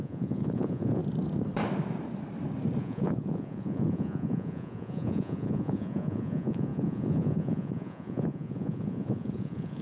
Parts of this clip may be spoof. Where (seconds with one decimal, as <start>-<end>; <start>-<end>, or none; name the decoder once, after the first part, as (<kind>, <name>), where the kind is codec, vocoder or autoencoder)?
0.0-1.0 (vocoder, Vocos); 2.8-9.8